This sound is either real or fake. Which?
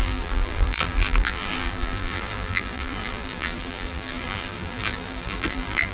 fake